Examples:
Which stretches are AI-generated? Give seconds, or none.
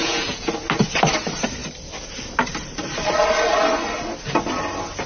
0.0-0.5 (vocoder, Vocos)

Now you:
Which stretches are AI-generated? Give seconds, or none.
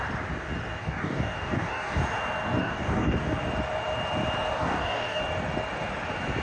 0.8-2.0 (codec, DAC); 2.6-3.4; 4.6-5.2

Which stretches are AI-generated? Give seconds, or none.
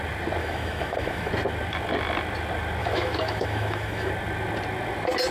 0.4-1.3 (autoencoder, DAC-VAE); 2.8-4.1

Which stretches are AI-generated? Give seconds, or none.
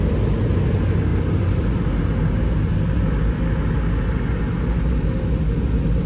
none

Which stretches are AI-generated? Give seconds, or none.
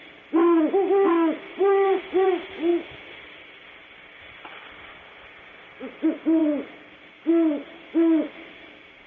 1.6-2.3 (vocoder, BigVGAN v2)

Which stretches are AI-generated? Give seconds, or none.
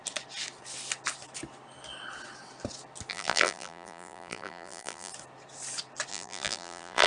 3.1-5.1 (vocoder, BigVGAN v2); 6.1-7.1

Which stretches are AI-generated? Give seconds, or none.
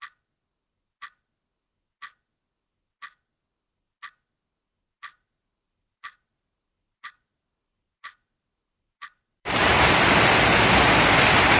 5.1-9.7 (vocoder, BigVGAN v2)